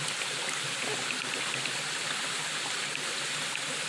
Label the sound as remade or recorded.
recorded